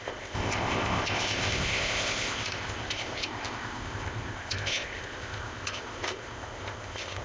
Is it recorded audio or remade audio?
remade